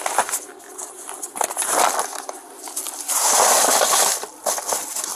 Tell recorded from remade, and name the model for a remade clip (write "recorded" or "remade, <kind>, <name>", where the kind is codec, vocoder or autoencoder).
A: recorded